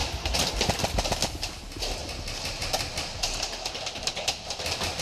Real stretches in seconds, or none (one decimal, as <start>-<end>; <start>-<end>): 0.5-2.0